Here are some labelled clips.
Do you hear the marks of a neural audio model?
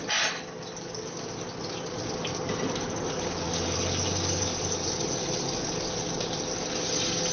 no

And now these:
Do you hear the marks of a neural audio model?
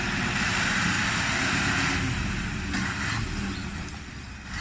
no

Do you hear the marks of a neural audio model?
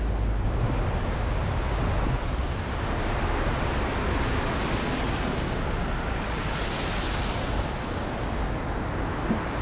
no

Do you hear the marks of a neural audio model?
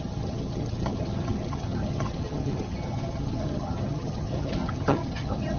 yes